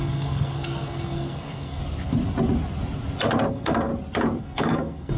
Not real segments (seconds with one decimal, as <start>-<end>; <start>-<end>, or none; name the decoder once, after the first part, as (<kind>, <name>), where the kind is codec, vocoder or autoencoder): 0.0-1.8 (codec, SNAC); 3.5-3.9; 4.4-5.2